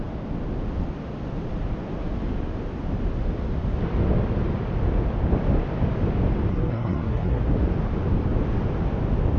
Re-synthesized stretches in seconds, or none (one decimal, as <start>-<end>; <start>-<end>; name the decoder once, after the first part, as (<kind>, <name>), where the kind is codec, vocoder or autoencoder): 6.5-7.4 (codec, SNAC)